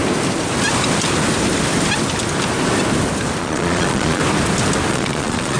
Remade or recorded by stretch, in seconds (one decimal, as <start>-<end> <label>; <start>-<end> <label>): 0.0-3.4 recorded; 3.4-4.2 remade; 4.2-4.9 recorded; 4.9-5.6 remade